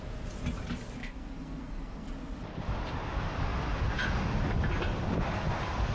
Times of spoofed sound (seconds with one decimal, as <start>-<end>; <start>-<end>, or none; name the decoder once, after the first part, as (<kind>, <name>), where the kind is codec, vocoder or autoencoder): 1.0-2.1 (codec, SNAC)